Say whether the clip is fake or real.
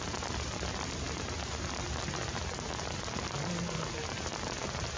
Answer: real